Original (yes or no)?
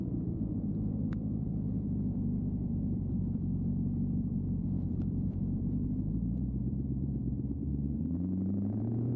no